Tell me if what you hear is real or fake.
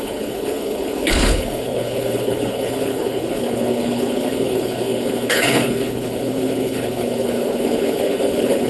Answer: fake